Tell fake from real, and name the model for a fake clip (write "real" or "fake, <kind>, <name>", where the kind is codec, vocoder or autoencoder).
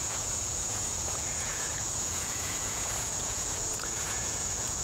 fake, vocoder, Vocos